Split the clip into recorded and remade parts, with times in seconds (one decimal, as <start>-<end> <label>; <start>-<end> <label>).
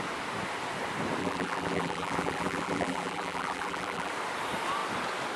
0.0-1.2 recorded; 1.2-4.1 remade; 4.1-5.4 recorded